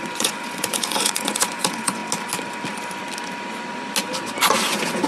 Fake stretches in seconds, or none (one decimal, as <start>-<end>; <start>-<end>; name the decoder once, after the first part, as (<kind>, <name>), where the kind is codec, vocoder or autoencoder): 0.0-2.0 (vocoder, Vocos)